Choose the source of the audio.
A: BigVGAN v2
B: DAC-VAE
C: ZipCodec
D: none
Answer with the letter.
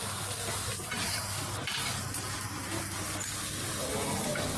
D